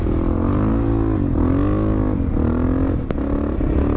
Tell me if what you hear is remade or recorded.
recorded